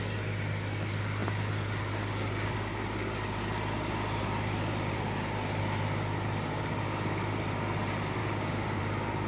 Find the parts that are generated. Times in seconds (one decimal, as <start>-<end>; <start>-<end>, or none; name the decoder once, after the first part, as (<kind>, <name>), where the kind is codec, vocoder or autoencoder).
8.2-8.8 (codec, DAC)